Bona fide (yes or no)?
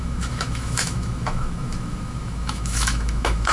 no